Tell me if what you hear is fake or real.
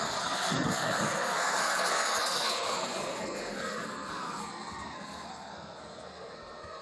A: fake